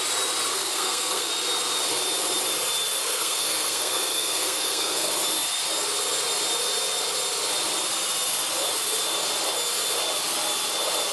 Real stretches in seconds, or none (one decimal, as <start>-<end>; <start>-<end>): 0.0-0.5; 1.3-3.0; 5.1-11.1